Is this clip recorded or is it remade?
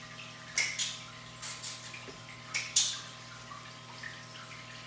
recorded